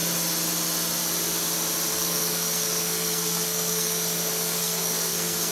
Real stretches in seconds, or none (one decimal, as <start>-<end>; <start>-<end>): 0.0-1.9